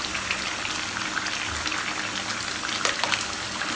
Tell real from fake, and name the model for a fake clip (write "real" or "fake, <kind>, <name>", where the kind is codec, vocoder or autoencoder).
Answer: real